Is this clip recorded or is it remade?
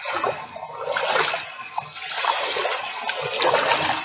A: recorded